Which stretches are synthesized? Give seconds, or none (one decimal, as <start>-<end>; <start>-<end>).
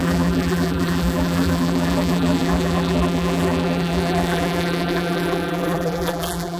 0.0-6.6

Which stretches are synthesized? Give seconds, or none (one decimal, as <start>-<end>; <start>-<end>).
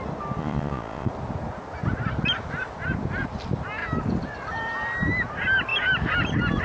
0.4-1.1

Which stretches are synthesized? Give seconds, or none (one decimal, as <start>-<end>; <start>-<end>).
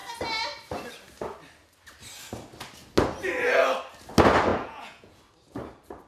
4.5-5.2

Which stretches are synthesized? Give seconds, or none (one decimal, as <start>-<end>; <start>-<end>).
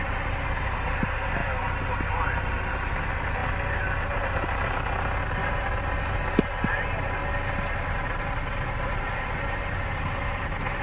none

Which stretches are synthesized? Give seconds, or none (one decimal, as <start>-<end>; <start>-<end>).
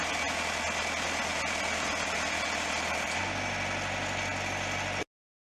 none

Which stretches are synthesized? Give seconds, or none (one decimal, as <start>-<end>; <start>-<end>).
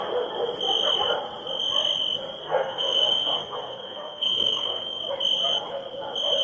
2.4-5.0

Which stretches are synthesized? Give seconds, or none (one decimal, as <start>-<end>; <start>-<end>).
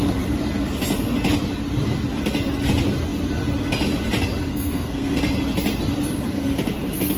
4.5-5.2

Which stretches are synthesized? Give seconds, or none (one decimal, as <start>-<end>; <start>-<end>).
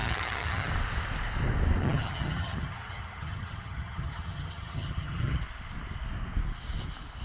0.0-0.7; 1.8-5.4